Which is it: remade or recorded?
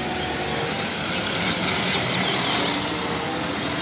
recorded